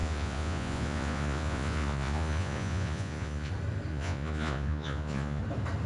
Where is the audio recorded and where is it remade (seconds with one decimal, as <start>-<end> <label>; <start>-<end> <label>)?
0.0-3.5 remade; 3.5-3.9 recorded; 3.9-5.4 remade; 5.4-5.9 recorded